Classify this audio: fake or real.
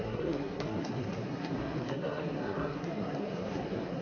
fake